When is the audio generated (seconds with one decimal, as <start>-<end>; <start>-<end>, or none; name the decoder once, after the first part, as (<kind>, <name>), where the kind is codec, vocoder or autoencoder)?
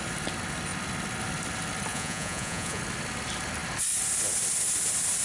1.9-2.8 (vocoder, Vocos)